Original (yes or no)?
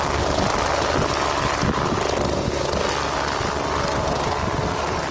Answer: yes